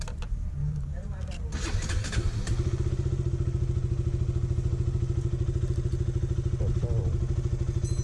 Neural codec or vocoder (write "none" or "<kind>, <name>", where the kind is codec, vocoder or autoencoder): none